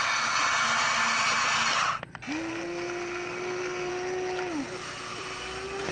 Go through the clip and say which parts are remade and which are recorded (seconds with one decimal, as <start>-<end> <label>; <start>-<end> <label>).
0.0-2.5 recorded; 2.5-3.9 remade; 3.9-5.9 recorded